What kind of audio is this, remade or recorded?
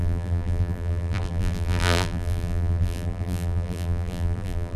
remade